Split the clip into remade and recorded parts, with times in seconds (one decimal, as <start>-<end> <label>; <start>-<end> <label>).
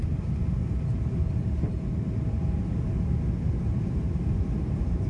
0.0-0.6 remade; 0.6-1.3 recorded; 1.3-2.6 remade; 2.6-3.6 recorded; 3.6-5.1 remade